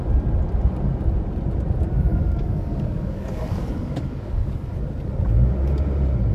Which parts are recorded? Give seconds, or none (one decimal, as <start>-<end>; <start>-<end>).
0.0-2.1; 4.7-6.3